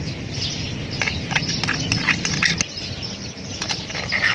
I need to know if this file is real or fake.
real